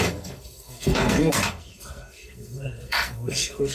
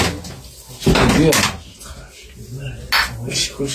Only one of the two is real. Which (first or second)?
second